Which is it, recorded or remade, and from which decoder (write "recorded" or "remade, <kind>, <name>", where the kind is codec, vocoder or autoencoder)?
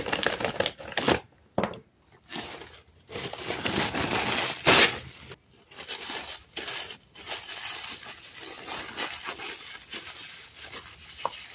recorded